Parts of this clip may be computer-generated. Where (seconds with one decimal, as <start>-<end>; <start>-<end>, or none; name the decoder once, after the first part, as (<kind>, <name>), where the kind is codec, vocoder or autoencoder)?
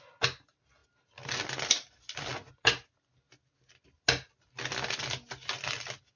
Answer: none